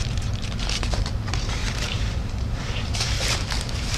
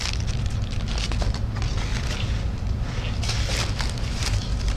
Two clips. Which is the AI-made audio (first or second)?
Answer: first